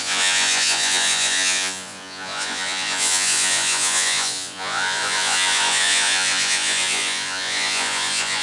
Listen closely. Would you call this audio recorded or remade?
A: remade